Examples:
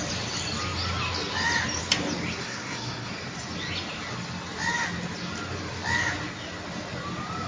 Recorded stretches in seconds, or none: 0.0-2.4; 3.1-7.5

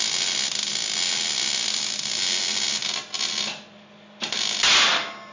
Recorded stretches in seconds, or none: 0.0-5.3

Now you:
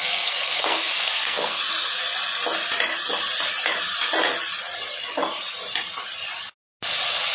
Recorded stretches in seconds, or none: 1.6-7.3

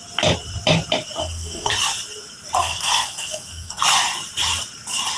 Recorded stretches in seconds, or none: 0.0-1.2; 1.7-2.6; 3.8-5.2